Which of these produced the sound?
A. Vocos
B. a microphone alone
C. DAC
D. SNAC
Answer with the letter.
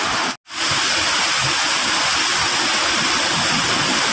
B